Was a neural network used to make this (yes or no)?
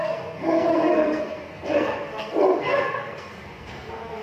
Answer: yes